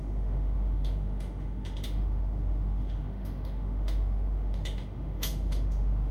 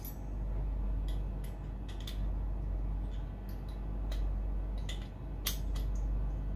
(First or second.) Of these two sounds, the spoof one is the first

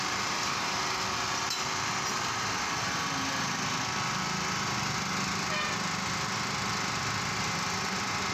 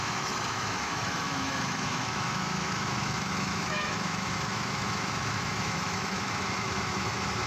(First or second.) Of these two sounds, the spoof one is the second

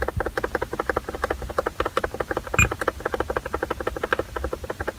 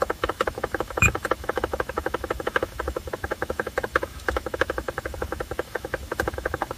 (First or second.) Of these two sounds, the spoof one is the second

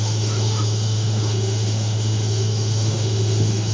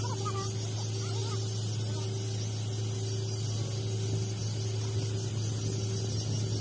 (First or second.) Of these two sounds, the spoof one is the first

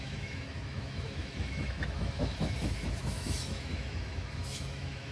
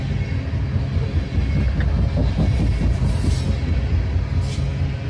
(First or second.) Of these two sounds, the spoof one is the first